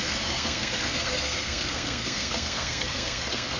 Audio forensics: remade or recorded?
remade